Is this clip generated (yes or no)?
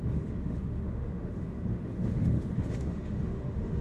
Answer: yes